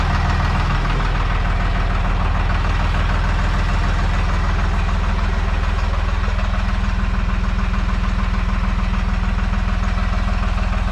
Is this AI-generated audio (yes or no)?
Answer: no